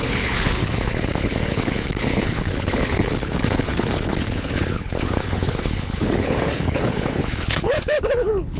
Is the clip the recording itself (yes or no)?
no